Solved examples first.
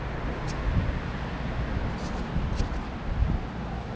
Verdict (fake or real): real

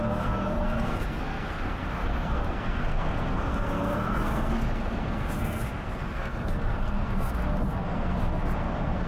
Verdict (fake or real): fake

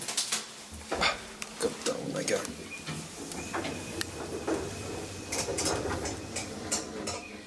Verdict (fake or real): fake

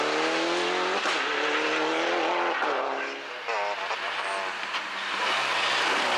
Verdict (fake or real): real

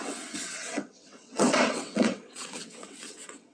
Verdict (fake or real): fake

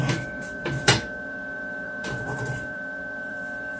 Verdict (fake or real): fake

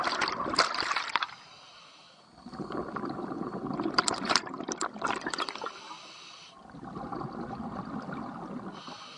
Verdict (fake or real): real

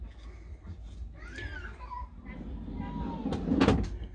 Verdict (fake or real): real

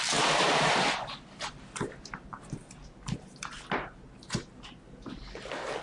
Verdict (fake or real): real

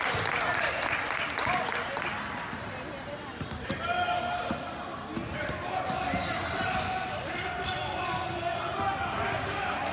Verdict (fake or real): real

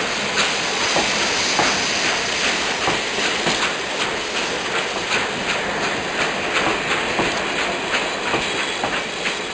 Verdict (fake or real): real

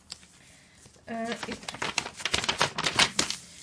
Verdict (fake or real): real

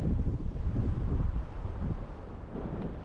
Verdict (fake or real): fake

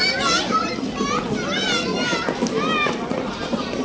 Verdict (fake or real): real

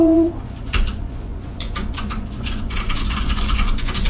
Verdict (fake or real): fake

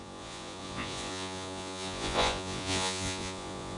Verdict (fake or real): fake